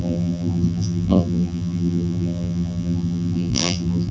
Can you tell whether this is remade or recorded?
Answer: remade